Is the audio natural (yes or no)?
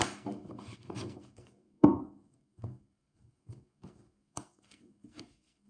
no